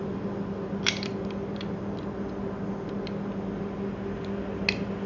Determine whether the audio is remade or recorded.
recorded